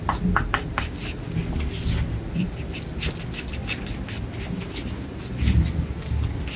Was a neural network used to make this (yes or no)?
no